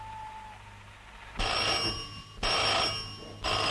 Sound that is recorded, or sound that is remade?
recorded